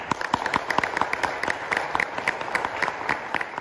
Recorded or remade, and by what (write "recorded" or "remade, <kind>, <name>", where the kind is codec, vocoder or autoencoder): recorded